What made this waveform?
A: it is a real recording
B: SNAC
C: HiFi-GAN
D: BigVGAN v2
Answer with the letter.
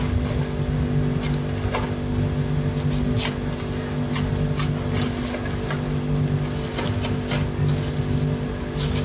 A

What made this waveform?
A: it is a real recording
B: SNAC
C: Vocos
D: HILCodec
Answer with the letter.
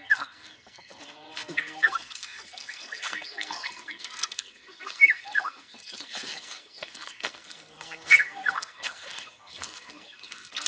B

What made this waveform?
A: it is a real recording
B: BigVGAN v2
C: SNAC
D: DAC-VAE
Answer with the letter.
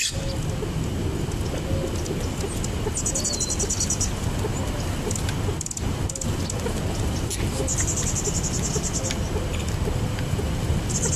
A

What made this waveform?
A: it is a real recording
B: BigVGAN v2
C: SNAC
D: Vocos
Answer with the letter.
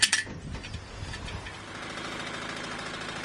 A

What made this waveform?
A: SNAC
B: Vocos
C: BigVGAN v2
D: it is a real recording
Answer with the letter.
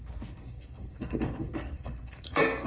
A